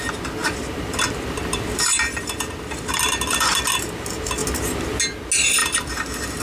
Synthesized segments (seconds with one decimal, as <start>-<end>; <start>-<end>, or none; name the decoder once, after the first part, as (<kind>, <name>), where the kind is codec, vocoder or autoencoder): 0.4-3.6 (vocoder, BigVGAN v2); 5.6-6.4